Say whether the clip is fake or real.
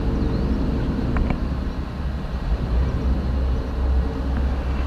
real